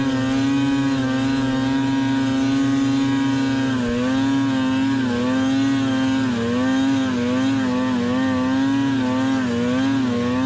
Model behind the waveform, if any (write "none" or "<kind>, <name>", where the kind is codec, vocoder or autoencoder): none